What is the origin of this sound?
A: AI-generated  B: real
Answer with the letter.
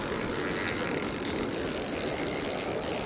B